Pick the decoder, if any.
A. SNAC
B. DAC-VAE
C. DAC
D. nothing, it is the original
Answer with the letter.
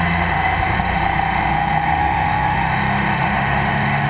B